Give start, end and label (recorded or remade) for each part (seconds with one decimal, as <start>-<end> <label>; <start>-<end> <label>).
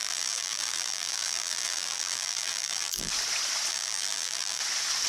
0.0-3.1 remade; 3.1-3.7 recorded; 3.7-4.6 remade; 4.6-5.1 recorded